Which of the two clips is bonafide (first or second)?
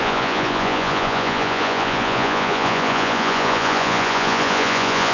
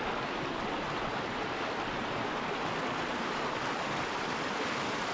second